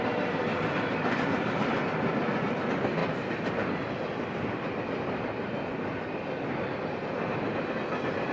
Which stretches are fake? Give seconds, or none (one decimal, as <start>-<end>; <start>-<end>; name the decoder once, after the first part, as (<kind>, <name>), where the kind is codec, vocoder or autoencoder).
0.5-1.6 (vocoder, BigVGAN v2)